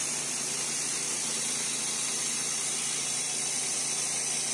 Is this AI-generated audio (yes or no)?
no